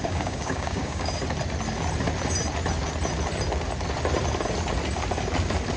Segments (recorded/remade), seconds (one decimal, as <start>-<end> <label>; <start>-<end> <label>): 0.0-1.2 remade; 1.2-5.8 recorded

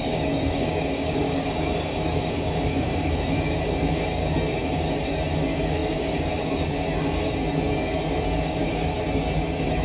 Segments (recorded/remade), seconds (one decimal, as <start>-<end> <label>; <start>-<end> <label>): 0.0-9.8 remade

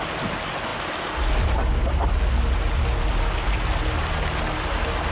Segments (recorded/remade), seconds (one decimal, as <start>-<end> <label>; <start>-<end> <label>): 0.0-5.1 recorded

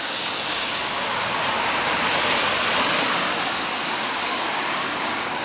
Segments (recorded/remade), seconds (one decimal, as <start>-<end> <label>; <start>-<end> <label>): 0.0-1.3 remade; 1.3-2.8 recorded; 2.8-5.4 remade